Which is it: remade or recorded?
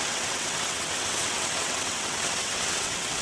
remade